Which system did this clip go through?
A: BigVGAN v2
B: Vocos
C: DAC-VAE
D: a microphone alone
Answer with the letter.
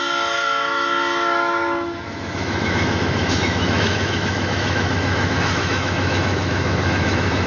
C